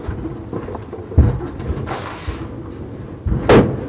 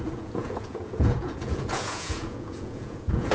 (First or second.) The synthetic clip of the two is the second